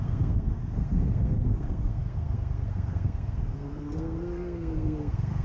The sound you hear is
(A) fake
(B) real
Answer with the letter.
A